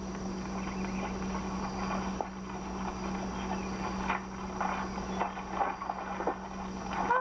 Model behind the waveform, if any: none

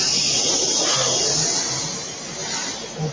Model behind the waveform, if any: none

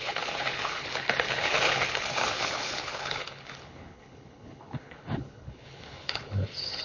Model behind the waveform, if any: codec, HILCodec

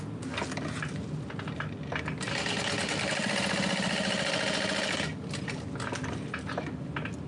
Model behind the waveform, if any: none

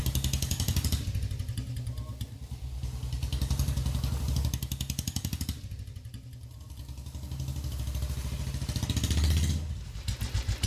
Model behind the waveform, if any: none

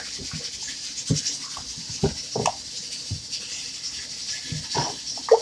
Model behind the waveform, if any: none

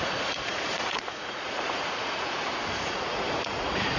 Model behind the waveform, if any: vocoder, Vocos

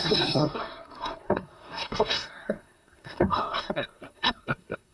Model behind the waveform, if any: codec, SNAC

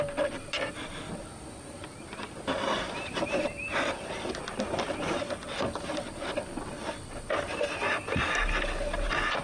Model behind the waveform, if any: none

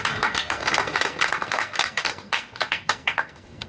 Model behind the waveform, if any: codec, SNAC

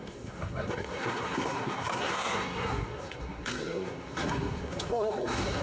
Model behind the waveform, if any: codec, SNAC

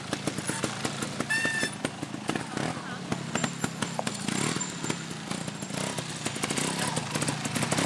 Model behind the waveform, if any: none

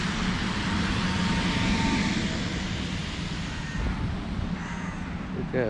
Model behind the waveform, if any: none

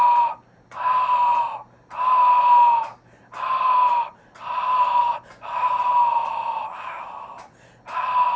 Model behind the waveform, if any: none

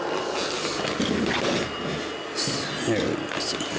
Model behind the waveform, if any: none